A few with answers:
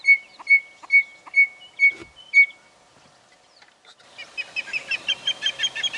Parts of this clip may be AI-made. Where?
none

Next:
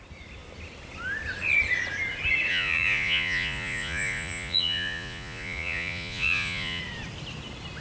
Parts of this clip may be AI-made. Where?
2.5-6.8 (vocoder, Vocos)

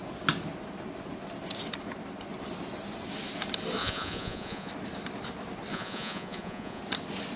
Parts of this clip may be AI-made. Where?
3.8-4.7 (vocoder, Vocos); 5.7-6.8

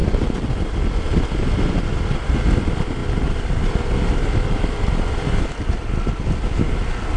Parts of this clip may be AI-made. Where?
none

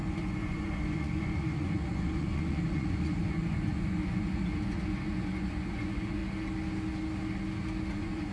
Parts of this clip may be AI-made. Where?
0.0-6.2 (vocoder, Vocos); 7.9-8.3

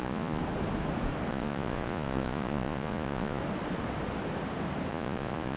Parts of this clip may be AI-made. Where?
0.0-0.4 (vocoder, Vocos); 1.3-3.4; 4.9-5.6

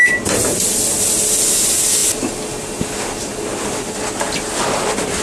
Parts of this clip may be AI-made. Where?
none